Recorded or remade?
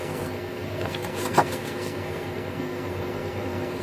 remade